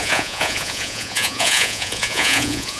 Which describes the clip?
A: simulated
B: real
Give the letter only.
A